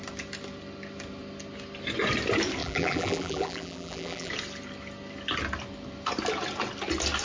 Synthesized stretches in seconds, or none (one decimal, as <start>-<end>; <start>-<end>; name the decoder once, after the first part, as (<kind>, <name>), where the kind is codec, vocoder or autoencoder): 2.6-4.3 (vocoder, BigVGAN v2)